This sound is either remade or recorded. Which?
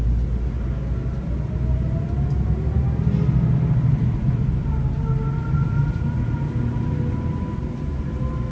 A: recorded